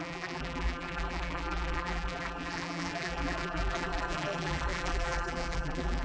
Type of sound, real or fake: fake